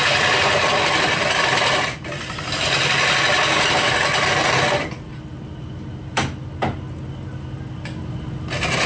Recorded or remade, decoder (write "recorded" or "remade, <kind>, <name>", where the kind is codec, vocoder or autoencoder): recorded